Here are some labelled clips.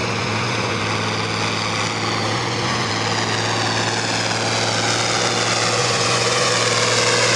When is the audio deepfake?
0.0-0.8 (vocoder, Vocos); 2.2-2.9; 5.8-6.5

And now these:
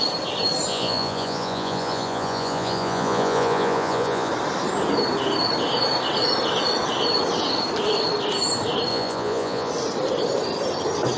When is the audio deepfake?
0.7-4.3 (vocoder, Vocos); 8.9-9.7

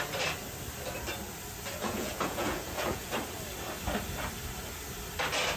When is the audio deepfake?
1.8-3.1 (vocoder, Vocos)

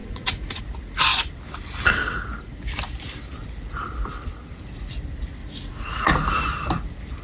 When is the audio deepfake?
0.0-0.6 (vocoder, Vocos); 5.4-6.1